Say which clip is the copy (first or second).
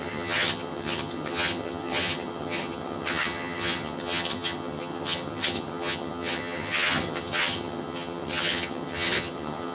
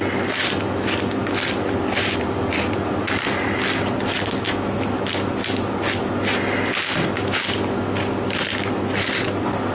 first